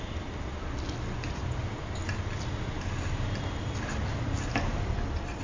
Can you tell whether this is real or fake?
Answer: real